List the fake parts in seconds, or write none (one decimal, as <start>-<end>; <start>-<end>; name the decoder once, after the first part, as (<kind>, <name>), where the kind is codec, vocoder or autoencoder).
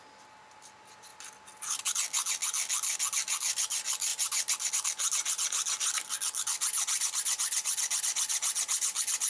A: none